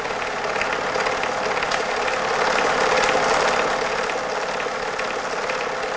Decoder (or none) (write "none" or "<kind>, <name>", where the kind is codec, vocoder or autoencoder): none